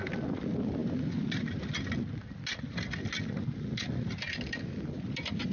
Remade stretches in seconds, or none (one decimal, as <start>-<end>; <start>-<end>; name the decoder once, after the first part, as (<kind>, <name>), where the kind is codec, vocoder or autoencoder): none